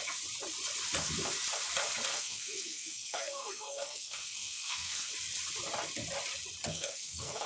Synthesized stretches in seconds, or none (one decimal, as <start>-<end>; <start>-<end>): 2.1-5.1; 6.7-7.5